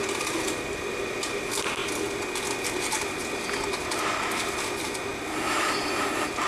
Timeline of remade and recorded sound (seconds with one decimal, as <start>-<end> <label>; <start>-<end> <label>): 0.0-1.8 remade; 1.8-2.8 recorded; 2.8-6.5 remade